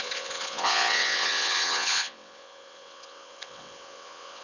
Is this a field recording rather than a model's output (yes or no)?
no